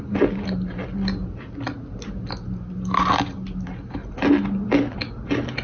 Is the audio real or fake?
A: real